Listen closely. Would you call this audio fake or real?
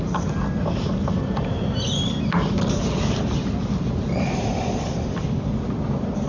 real